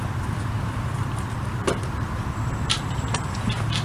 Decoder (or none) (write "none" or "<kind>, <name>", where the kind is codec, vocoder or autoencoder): vocoder, BigVGAN v2